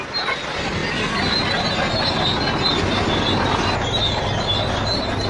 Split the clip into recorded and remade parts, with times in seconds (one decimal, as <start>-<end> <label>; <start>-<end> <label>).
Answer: 0.0-5.3 recorded